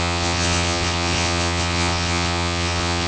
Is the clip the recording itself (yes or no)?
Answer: no